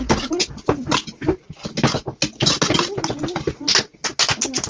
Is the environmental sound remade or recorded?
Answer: recorded